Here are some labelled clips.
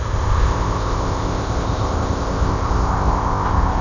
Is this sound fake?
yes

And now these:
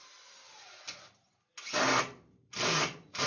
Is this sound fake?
no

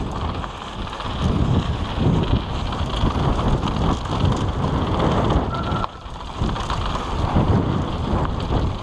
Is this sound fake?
no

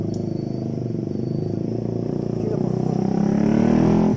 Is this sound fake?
no